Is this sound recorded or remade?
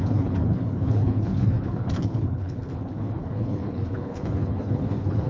remade